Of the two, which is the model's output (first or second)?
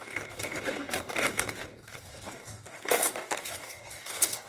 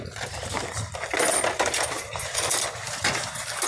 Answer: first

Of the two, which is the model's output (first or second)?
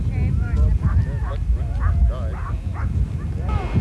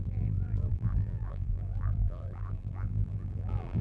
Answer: second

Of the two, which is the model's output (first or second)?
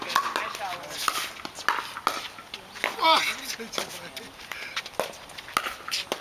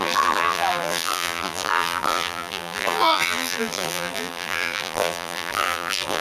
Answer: second